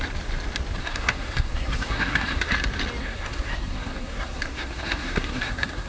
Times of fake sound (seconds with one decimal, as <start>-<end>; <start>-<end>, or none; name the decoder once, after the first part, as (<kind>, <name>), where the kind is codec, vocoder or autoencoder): 0.8-2.5 (codec, SNAC); 3.0-5.9